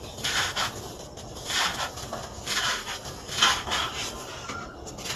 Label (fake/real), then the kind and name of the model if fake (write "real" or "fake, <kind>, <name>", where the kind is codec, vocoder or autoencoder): real